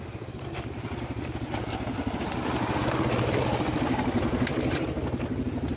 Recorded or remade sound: recorded